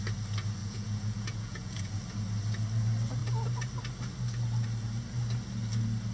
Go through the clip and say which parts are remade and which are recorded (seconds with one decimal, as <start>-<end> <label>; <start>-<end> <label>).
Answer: 0.0-0.6 recorded; 0.6-2.0 remade; 2.0-6.1 recorded